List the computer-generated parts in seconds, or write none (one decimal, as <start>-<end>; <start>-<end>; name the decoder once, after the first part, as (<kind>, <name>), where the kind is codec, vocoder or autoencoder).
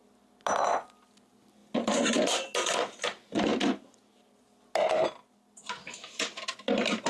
none